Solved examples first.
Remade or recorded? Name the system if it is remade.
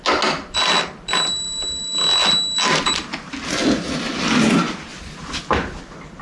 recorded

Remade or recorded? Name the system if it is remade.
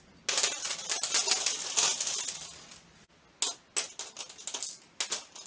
recorded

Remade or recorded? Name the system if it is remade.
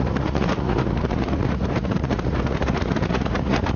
remade, vocoder, Vocos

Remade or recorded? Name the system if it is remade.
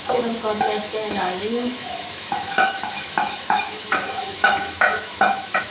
remade, autoencoder, DAC-VAE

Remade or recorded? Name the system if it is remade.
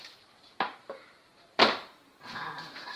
remade, vocoder, BigVGAN v2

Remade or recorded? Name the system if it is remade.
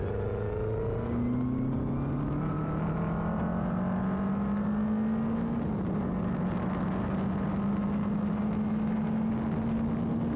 recorded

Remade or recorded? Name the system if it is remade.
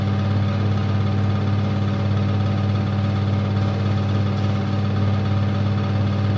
recorded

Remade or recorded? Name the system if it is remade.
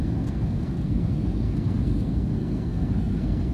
remade, codec, SNAC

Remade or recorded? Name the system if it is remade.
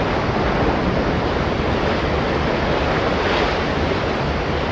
recorded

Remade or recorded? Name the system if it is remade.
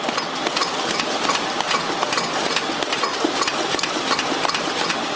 recorded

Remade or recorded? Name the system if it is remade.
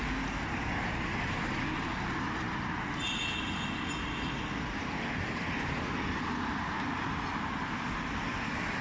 recorded